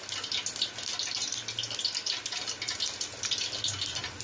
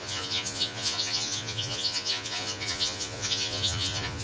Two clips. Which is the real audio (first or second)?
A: first